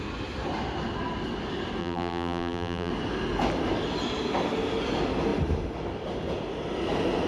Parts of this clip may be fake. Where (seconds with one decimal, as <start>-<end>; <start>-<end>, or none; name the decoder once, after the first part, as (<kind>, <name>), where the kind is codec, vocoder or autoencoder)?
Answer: 1.8-2.9 (vocoder, BigVGAN v2)